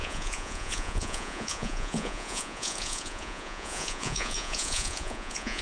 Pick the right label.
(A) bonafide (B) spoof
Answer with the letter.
B